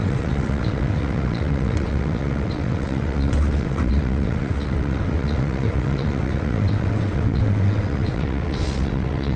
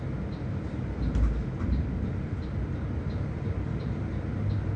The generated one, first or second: first